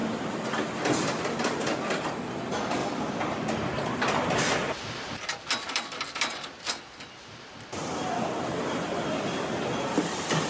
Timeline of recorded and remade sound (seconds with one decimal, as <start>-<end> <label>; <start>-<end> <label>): 0.0-10.5 recorded